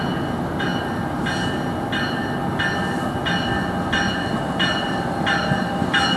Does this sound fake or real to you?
real